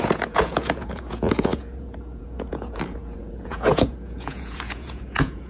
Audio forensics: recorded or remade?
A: remade